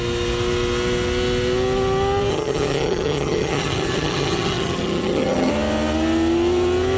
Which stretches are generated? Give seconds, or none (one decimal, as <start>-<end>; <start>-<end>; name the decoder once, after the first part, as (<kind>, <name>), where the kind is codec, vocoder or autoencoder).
2.3-5.5 (vocoder, HiFi-GAN)